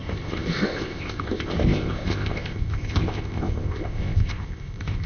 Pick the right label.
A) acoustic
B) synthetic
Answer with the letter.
B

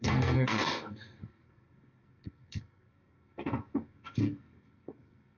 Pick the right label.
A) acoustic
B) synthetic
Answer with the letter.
B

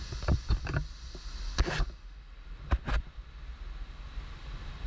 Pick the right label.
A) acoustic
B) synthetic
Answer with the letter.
A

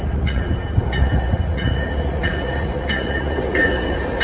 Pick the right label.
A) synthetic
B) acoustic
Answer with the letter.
A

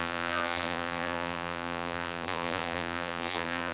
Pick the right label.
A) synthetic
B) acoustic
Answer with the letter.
A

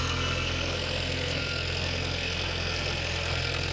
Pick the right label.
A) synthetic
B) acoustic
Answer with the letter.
A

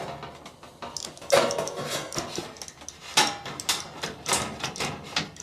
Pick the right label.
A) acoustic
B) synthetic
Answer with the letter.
A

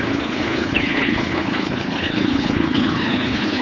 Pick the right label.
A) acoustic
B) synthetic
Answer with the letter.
B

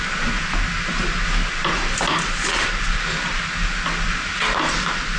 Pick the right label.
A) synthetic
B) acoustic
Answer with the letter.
B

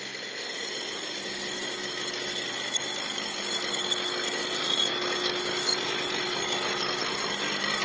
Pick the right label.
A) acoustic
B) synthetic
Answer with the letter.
A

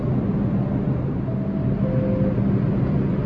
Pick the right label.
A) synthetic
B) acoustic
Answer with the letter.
B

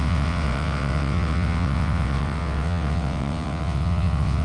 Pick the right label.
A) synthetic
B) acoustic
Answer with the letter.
A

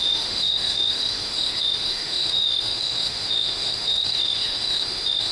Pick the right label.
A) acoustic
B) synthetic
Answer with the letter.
B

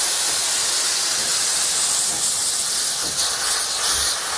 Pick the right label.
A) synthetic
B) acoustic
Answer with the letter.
B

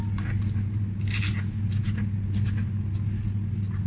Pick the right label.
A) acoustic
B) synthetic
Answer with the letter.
A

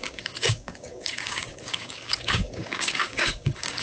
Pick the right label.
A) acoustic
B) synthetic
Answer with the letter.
B